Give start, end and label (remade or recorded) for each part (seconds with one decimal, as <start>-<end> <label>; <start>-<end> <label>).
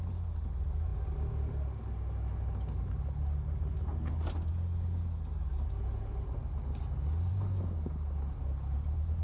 0.0-9.2 recorded